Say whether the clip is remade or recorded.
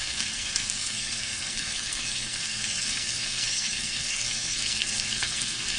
remade